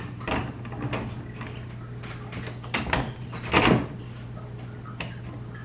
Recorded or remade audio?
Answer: recorded